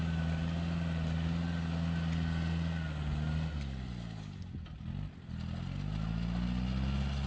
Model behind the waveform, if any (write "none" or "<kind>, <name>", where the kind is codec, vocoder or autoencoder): none